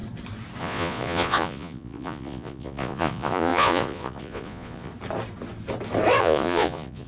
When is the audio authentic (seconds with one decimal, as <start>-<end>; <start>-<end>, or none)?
0.0-0.6; 4.9-6.2

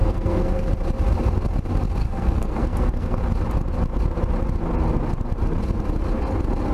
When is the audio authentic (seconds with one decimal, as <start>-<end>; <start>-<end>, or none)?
0.7-2.0; 3.2-6.7

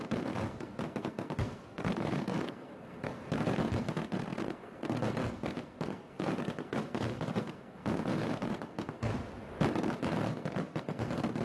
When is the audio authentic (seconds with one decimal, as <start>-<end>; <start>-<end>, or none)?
9.1-9.8

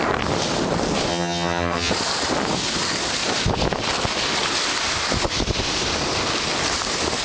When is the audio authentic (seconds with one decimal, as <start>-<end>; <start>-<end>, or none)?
0.0-1.1; 1.9-7.2